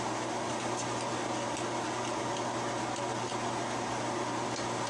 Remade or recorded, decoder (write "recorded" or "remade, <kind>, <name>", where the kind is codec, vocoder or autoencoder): recorded